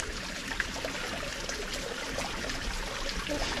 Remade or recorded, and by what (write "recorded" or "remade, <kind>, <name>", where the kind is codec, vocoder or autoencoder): recorded